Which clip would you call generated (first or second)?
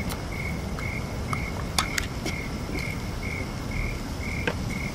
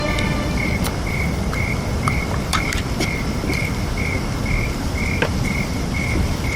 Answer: second